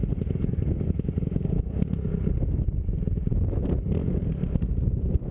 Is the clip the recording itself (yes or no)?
yes